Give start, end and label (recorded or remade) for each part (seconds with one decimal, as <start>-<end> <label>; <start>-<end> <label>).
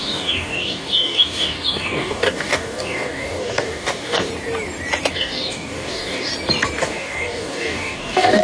0.0-4.3 remade; 4.3-5.1 recorded; 5.1-6.3 remade; 6.3-6.8 recorded; 6.8-8.4 remade